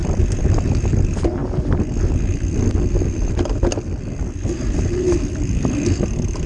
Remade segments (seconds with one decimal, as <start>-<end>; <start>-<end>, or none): 0.0-1.4; 4.7-6.5